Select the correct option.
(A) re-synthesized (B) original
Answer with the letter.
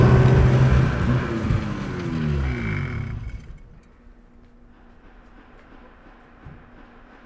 B